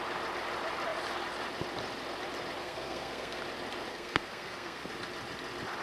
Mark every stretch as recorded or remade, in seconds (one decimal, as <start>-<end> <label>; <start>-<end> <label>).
0.0-2.6 recorded; 2.6-3.4 remade; 3.4-3.9 recorded; 3.9-4.9 remade; 4.9-5.8 recorded